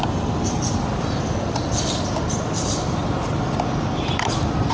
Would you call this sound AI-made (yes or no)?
no